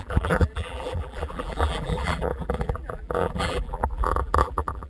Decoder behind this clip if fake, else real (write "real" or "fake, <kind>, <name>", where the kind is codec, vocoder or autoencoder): fake, vocoder, BigVGAN v2